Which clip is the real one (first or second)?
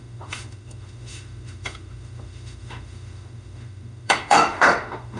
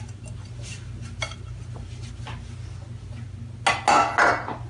second